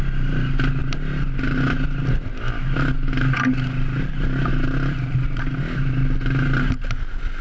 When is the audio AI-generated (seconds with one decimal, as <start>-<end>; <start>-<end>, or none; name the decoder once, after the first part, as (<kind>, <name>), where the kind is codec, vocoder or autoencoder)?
none